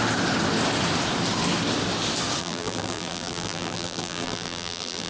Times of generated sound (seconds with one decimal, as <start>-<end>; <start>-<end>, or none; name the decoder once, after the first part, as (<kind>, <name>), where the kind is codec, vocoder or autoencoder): 2.4-5.1 (vocoder, BigVGAN v2)